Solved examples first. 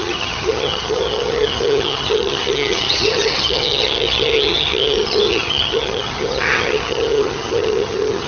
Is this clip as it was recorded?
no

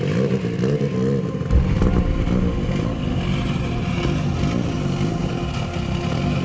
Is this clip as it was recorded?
yes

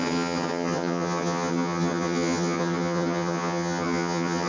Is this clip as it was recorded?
no